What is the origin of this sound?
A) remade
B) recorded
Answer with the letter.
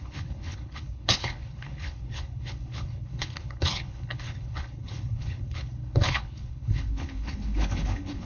A